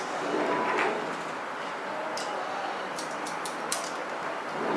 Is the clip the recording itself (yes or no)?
no